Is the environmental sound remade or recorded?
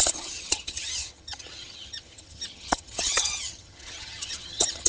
remade